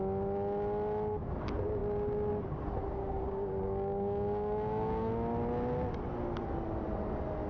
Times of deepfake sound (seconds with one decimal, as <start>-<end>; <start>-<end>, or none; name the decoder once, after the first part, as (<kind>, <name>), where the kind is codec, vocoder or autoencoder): 3.0-5.1 (codec, DAC)